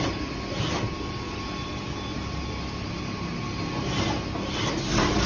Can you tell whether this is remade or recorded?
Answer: recorded